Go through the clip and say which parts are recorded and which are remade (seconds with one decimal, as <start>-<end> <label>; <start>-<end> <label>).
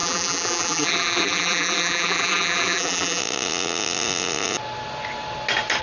0.0-3.2 remade; 3.2-5.8 recorded